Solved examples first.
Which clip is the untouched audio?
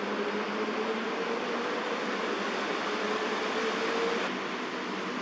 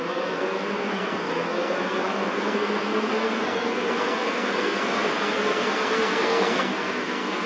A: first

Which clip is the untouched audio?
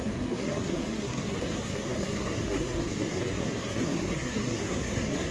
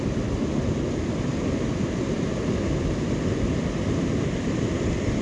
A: second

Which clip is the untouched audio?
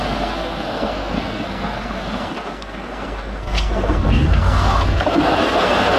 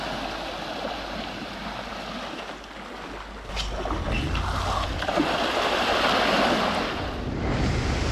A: second